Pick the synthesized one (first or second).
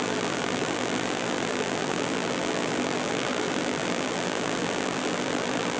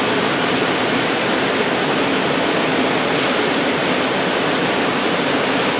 first